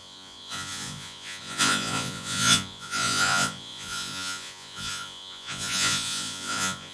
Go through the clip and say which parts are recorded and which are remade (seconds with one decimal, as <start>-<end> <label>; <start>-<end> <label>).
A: 0.0-6.9 remade